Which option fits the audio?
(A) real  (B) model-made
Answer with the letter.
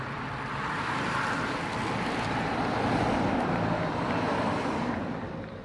B